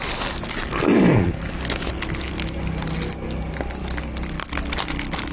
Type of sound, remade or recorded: recorded